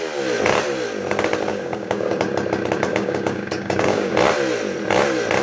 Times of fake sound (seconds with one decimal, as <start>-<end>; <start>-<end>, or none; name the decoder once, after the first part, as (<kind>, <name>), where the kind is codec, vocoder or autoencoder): 1.5-2.2 (codec, DAC); 2.9-4.1